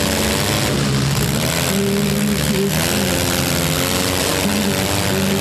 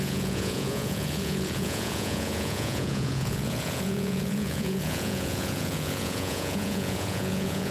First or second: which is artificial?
second